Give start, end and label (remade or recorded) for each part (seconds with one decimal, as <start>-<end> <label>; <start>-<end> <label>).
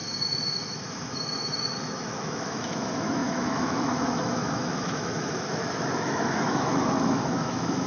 0.0-7.9 remade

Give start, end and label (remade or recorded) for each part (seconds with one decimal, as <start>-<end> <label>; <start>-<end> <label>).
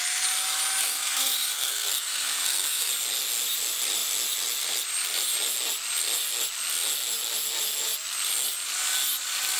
0.0-0.8 recorded; 0.8-2.9 remade; 2.9-9.6 recorded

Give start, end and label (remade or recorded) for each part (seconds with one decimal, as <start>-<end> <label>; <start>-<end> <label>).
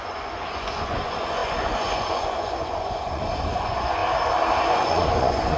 0.0-4.0 remade; 4.0-4.6 recorded; 4.6-5.6 remade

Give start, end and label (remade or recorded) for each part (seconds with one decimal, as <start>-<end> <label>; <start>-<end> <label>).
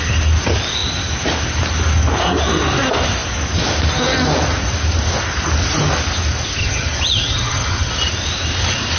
0.0-6.6 recorded; 6.6-7.9 remade; 7.9-9.0 recorded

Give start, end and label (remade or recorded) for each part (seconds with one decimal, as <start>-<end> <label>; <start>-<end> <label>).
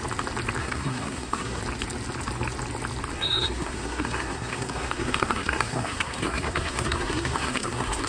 0.0-0.6 recorded; 0.6-1.6 remade; 1.6-3.1 recorded; 3.1-8.1 remade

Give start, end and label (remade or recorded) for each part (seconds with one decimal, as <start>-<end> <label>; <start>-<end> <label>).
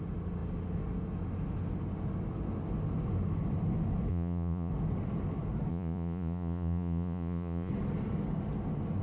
0.0-4.1 recorded; 4.1-4.7 remade; 4.7-5.7 recorded; 5.7-7.7 remade; 7.7-9.0 recorded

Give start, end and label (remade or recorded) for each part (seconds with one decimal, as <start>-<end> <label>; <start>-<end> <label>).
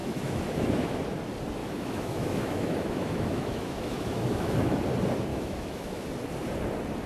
0.0-1.0 remade; 1.0-1.6 recorded; 1.6-4.8 remade; 4.8-5.3 recorded; 5.3-6.1 remade; 6.1-7.1 recorded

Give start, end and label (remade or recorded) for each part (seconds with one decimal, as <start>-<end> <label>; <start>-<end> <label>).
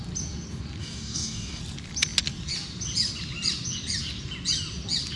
0.0-0.8 recorded; 0.8-1.6 remade; 1.6-5.2 recorded